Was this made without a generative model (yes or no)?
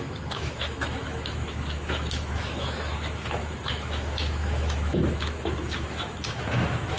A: no